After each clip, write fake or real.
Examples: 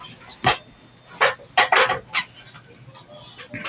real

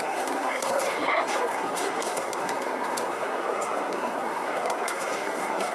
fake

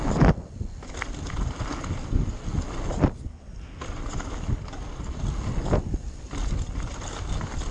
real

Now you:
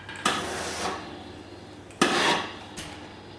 real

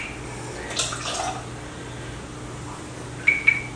real